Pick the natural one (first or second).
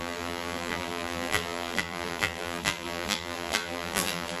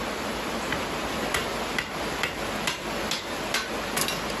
second